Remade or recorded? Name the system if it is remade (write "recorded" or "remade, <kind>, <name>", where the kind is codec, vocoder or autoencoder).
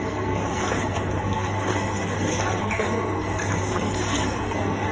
remade, codec, SNAC